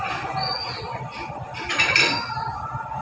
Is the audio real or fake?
real